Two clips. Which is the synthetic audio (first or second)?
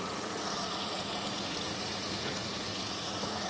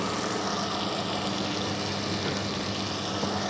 first